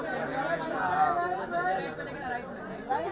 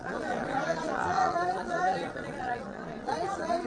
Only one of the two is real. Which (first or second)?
first